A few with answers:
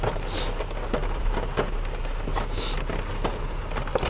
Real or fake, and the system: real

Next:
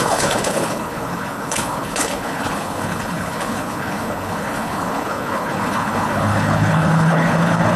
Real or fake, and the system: fake, codec, HILCodec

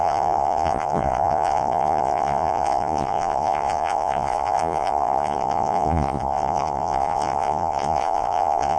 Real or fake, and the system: fake, vocoder, Vocos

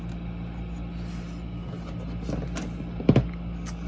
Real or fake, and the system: real